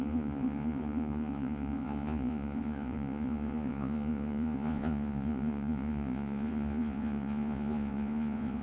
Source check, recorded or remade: remade